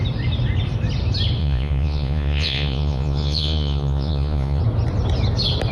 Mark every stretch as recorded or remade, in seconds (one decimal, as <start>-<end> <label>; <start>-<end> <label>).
0.0-1.4 recorded; 1.4-4.6 remade; 4.6-5.7 recorded